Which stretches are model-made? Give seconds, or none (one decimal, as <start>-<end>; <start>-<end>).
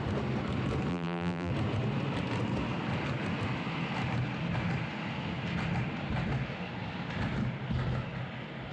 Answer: 0.9-1.5